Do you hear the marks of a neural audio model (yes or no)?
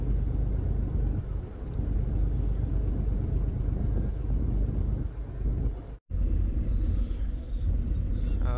no